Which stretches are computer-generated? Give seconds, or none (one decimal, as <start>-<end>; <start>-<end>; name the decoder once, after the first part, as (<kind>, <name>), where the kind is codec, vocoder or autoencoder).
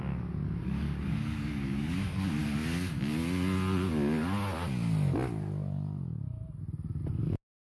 0.6-2.4 (codec, DAC)